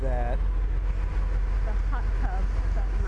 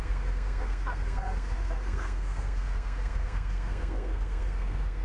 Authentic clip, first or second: first